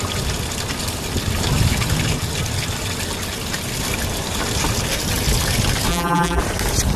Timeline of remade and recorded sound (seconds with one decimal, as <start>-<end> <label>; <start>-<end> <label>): 0.0-5.9 recorded; 5.9-6.4 remade; 6.4-7.0 recorded